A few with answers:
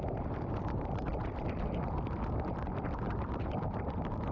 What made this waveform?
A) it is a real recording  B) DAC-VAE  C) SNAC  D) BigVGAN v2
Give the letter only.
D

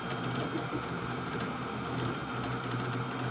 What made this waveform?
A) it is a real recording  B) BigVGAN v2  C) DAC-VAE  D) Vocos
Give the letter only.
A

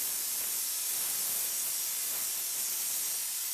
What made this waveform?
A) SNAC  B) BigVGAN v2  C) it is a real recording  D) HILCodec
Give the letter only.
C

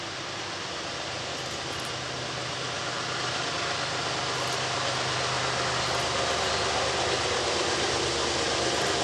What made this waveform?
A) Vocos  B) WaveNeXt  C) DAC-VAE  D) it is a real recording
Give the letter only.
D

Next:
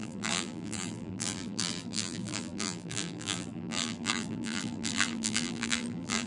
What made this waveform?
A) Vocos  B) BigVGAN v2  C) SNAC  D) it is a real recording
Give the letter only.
B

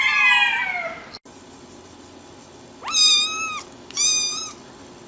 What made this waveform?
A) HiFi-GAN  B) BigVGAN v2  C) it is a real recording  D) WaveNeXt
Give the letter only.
C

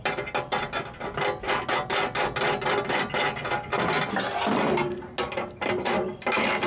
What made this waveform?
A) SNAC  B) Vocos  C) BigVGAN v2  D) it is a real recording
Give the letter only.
D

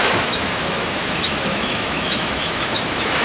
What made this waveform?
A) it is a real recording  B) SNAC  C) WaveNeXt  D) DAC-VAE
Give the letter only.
D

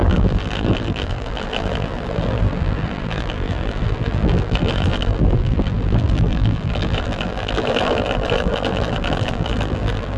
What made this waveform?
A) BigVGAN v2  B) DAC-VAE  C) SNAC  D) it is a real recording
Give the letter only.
A